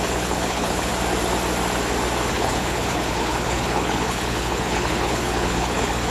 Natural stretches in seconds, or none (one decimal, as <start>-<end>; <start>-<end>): 0.9-2.3